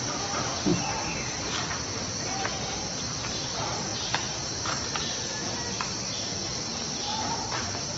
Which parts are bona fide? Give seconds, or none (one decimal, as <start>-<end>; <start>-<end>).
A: 0.0-0.7; 3.5-7.1